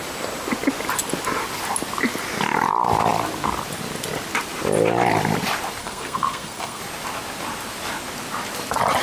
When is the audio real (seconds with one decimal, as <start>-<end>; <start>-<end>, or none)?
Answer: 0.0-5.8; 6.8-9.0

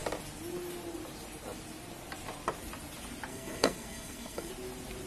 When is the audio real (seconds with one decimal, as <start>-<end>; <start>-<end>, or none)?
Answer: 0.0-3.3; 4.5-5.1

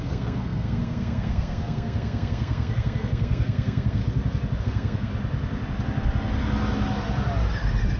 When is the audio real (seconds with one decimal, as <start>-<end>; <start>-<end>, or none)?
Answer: 4.0-4.6; 5.1-8.0

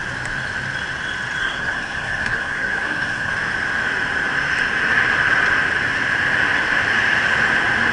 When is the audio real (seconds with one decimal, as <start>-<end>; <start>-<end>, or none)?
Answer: 0.0-1.4; 3.3-7.9

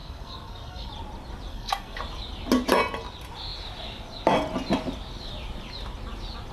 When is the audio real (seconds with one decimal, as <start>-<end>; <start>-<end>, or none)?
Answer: 0.9-1.5; 2.0-6.5

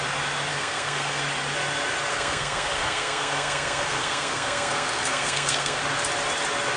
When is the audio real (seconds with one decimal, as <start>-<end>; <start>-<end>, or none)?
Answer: 0.0-0.5; 1.2-2.1; 5.8-6.8